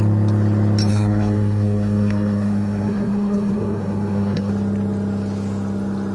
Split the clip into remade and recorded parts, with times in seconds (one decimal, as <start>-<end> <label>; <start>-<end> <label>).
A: 0.0-0.9 recorded; 0.9-4.5 remade; 4.5-6.1 recorded